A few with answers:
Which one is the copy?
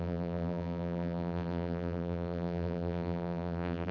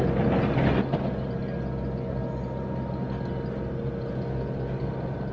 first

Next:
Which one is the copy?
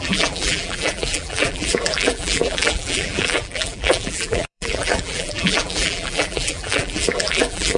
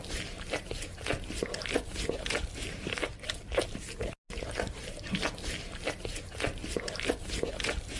first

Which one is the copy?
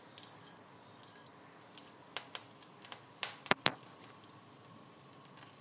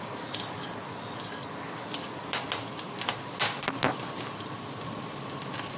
first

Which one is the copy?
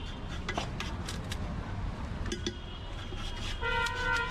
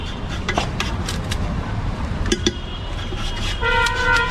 second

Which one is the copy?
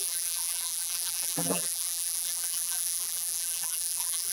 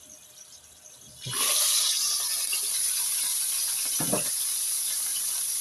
first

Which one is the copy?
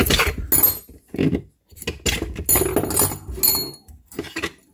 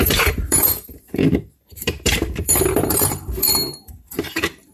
second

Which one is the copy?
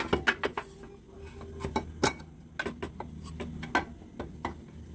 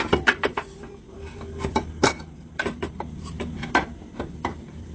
second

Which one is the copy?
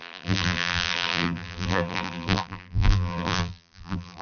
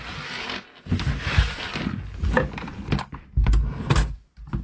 first